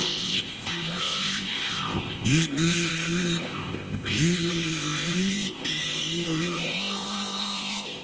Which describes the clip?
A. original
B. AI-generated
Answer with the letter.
B